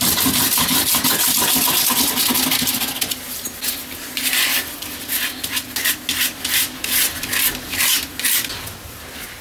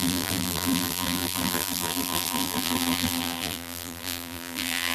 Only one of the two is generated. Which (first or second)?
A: second